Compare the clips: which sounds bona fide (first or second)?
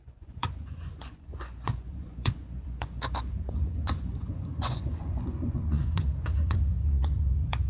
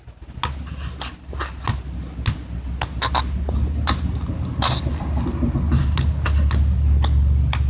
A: second